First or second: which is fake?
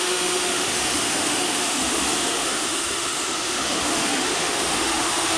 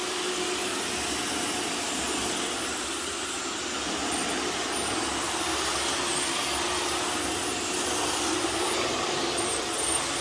first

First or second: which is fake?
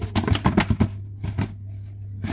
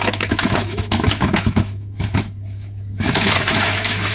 second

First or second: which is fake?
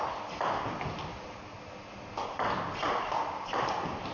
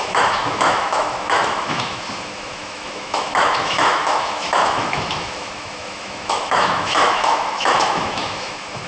second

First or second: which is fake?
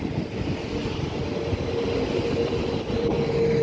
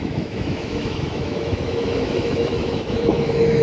second